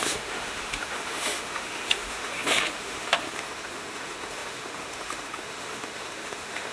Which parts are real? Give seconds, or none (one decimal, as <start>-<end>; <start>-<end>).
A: none